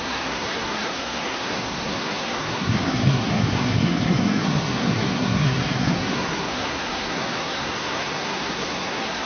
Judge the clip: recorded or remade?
remade